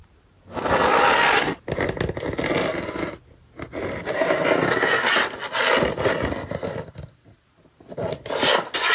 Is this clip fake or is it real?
real